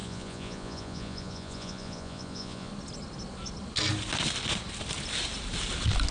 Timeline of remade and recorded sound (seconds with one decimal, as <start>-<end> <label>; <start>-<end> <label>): 0.0-2.7 remade; 2.7-6.1 recorded